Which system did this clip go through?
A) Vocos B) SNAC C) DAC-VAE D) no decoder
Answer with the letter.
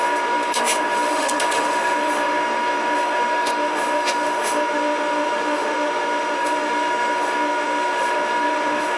C